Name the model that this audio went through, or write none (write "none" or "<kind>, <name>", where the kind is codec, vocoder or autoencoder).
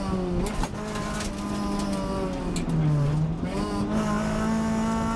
none